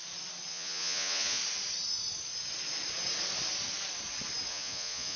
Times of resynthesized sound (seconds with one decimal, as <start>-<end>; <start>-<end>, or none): 0.5-1.4; 4.5-5.2